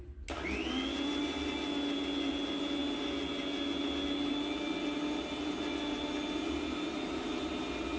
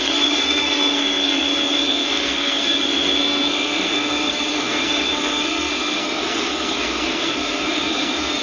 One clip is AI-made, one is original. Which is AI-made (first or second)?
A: second